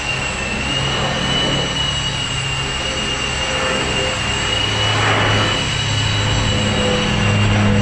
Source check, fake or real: real